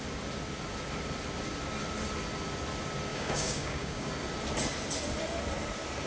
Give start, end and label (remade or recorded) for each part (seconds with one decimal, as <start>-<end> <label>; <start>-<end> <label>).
0.0-3.1 recorded; 3.1-4.1 remade; 4.1-6.1 recorded